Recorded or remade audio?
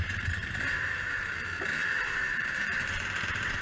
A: remade